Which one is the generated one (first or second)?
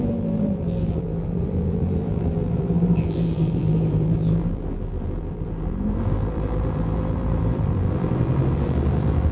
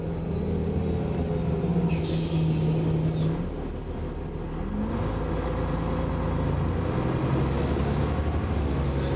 first